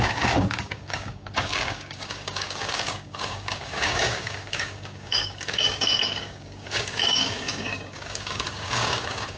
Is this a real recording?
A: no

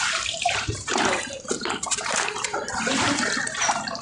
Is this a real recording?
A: no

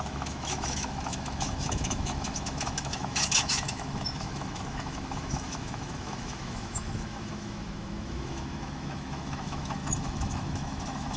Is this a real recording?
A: no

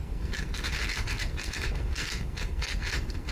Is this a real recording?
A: no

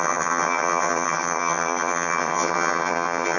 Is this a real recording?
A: no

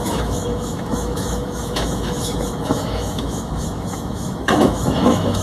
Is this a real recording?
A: no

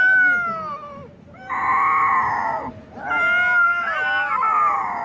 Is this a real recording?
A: yes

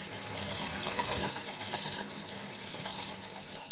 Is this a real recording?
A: no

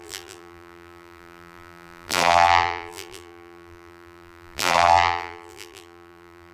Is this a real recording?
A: no